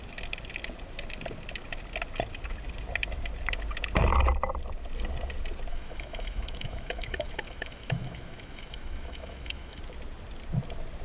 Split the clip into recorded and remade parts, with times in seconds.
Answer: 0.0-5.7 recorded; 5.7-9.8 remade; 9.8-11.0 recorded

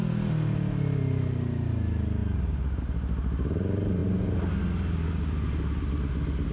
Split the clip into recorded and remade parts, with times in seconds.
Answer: 0.0-6.5 recorded

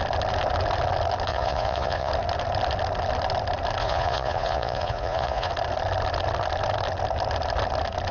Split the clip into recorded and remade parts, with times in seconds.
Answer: 0.0-1.3 recorded; 1.3-2.1 remade; 2.1-3.8 recorded; 3.8-5.5 remade; 5.5-8.1 recorded

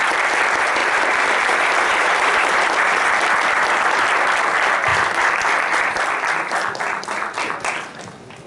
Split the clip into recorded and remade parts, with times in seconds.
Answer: 0.0-0.8 recorded; 0.8-3.3 remade; 3.3-8.5 recorded

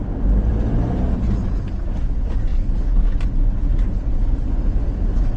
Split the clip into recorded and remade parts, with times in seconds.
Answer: 0.0-5.4 recorded